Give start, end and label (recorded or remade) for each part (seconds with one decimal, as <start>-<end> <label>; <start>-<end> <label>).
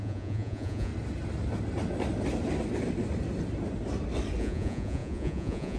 0.0-0.9 remade; 0.9-4.4 recorded; 4.4-5.8 remade